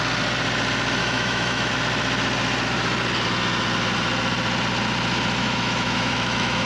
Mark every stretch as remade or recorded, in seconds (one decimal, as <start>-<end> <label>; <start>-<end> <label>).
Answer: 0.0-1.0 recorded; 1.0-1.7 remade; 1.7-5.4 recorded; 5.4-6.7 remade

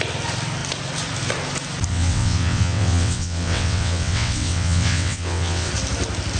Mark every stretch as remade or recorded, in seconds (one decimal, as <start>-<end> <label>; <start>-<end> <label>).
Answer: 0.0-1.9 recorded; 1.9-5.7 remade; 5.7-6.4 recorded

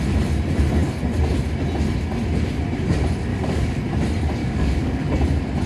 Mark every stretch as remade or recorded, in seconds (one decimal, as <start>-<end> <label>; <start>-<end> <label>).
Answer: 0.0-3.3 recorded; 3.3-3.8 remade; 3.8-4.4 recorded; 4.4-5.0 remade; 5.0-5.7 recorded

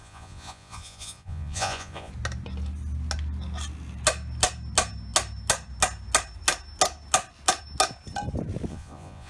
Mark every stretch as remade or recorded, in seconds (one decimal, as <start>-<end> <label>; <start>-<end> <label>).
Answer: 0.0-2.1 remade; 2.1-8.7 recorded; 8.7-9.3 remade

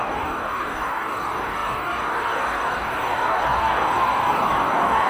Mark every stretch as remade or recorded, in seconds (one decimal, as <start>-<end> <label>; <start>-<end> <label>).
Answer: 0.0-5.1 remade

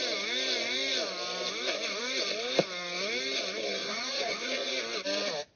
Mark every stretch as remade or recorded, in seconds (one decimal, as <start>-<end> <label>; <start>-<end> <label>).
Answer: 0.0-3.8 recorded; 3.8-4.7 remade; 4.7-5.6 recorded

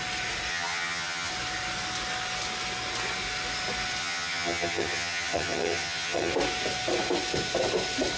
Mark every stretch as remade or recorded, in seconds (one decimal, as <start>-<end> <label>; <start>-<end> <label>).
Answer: 0.0-0.5 recorded; 0.5-1.3 remade; 1.3-4.0 recorded; 4.0-6.3 remade; 6.3-8.2 recorded